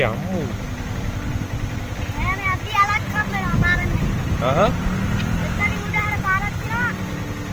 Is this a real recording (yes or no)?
yes